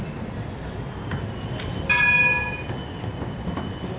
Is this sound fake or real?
real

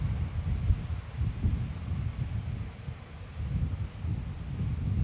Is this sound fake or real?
real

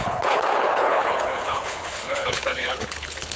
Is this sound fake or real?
fake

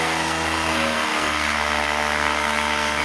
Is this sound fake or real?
fake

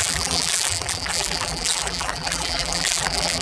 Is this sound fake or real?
fake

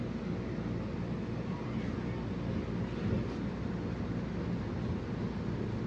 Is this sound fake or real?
real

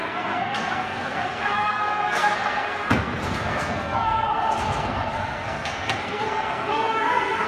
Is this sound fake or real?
fake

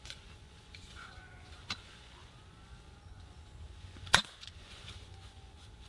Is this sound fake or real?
fake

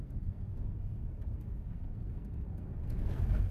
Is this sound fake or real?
fake